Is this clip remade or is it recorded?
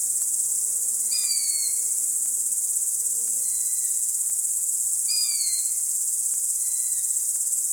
remade